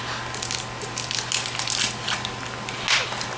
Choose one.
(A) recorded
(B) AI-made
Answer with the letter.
A